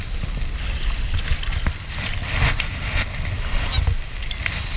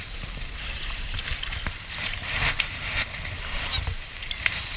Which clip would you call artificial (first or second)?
second